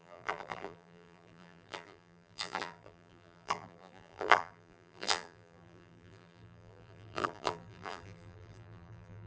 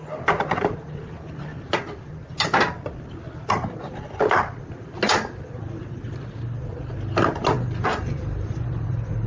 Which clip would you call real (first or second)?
second